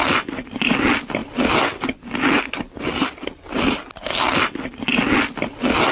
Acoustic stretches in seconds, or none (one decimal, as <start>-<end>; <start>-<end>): 0.0-5.9